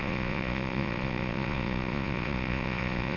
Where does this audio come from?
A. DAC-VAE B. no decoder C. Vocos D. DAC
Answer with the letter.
C